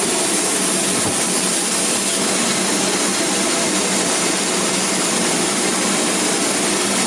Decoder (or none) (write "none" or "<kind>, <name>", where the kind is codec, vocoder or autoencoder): none